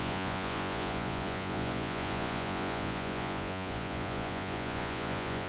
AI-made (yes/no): yes